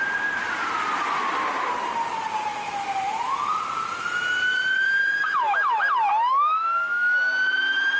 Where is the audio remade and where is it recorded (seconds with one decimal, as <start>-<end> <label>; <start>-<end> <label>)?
0.0-2.5 recorded; 2.5-3.6 remade; 3.6-5.0 recorded; 5.0-5.8 remade; 5.8-6.3 recorded; 6.3-7.3 remade; 7.3-8.0 recorded